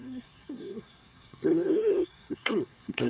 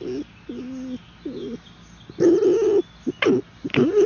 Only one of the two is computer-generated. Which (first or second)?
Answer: first